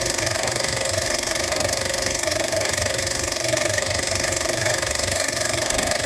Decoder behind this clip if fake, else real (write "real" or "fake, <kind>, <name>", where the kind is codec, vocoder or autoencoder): fake, codec, SNAC